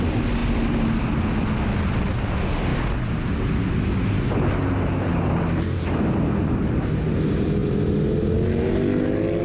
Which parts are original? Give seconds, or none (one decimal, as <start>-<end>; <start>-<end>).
0.0-9.4